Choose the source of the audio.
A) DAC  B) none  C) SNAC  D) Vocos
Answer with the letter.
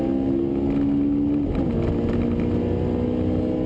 B